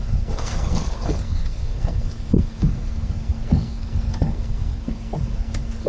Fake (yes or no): yes